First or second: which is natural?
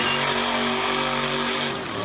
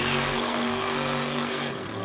first